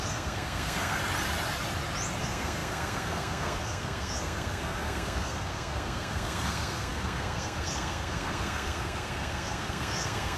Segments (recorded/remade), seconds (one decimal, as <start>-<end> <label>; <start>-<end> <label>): 0.0-1.0 remade; 1.0-2.2 recorded; 2.2-10.4 remade